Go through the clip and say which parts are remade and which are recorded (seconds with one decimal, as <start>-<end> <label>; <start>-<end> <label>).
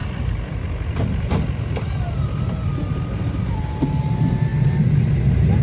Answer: 0.0-5.6 recorded